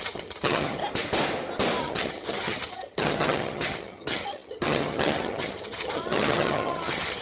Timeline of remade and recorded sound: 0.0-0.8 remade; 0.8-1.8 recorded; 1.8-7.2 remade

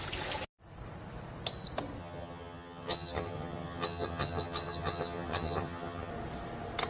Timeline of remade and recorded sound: 0.0-2.0 recorded; 2.0-6.1 remade; 6.1-6.9 recorded

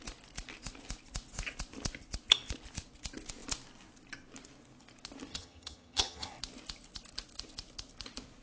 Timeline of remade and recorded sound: 0.0-5.3 recorded; 5.3-6.3 remade; 6.3-8.4 recorded

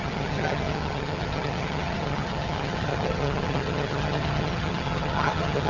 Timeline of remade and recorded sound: 0.0-5.7 remade

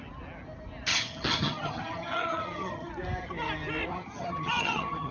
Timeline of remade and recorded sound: 0.0-0.9 recorded; 0.9-2.9 remade; 2.9-3.9 recorded; 3.9-5.1 remade

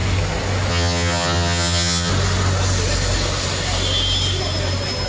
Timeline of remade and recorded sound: 0.0-0.7 recorded; 0.7-2.1 remade; 2.1-5.1 recorded

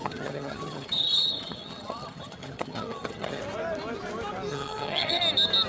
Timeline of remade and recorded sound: 0.0-3.4 remade; 3.4-4.5 recorded; 4.5-5.2 remade; 5.2-5.7 recorded